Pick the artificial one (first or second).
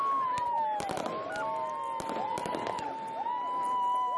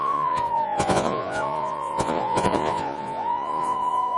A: second